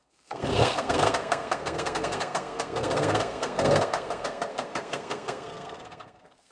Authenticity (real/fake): fake